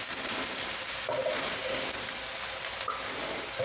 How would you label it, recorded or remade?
recorded